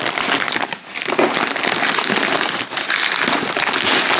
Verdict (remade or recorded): recorded